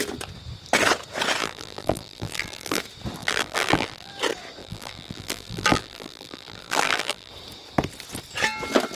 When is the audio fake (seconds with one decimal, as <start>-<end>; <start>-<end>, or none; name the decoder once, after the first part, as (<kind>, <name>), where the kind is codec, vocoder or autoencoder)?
1.4-2.8 (vocoder, BigVGAN v2); 3.2-4.1; 4.6-7.3